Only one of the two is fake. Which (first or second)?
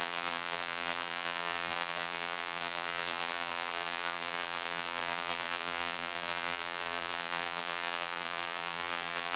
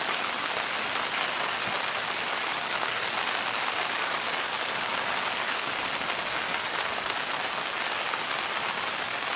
first